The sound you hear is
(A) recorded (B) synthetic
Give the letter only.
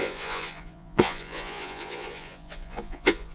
B